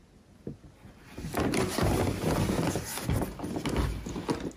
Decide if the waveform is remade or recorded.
recorded